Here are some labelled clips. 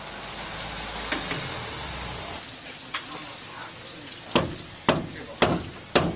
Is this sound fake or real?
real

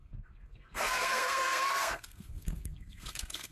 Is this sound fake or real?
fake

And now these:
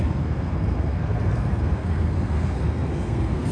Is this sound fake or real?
fake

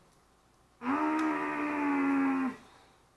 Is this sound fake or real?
real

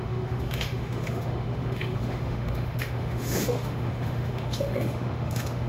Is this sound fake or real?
fake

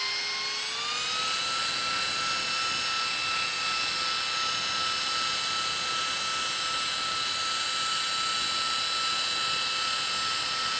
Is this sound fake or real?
real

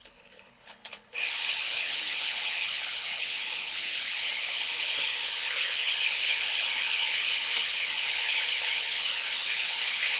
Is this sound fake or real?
fake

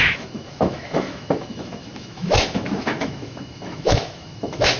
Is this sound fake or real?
fake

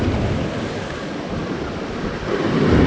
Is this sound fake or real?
real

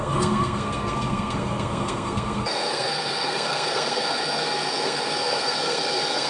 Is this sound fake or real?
fake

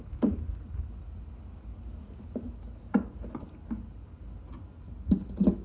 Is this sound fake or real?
real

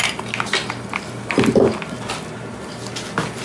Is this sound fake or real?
real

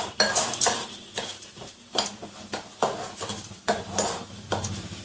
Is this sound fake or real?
real